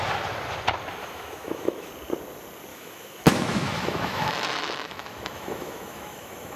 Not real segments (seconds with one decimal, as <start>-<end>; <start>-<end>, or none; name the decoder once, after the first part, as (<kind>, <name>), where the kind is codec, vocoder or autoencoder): 1.0-1.9 (autoencoder, DAC-VAE); 2.7-6.6

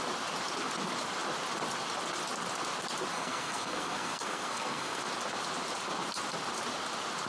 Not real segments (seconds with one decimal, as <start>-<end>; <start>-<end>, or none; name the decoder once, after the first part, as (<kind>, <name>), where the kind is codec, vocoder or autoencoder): 3.1-5.0 (codec, SNAC)

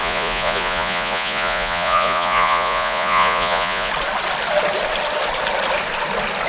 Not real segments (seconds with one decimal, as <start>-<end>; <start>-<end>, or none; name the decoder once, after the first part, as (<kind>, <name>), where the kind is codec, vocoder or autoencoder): 0.0-3.9 (vocoder, Vocos)

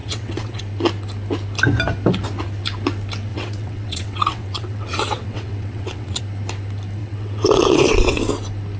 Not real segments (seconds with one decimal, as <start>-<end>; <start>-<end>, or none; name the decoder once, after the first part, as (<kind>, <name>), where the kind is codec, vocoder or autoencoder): 0.0-0.6 (vocoder, WaveNeXt); 3.3-6.2; 7.0-8.2

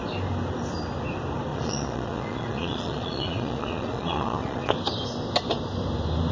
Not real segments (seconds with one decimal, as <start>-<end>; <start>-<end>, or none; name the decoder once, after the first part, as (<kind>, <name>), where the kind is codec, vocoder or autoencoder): 1.5-4.7 (vocoder, Vocos)

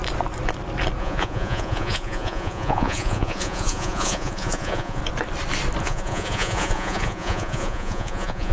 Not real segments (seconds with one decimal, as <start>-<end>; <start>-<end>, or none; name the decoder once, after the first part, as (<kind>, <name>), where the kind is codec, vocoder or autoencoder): 1.0-5.0 (vocoder, Vocos); 5.8-8.5

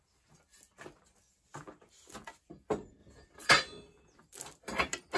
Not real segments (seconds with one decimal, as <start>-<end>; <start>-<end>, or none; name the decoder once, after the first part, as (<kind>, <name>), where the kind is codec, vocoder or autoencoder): none

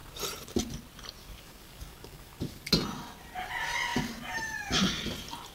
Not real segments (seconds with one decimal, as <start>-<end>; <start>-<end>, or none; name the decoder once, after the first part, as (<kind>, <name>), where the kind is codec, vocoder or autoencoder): 1.2-2.7 (codec, DAC)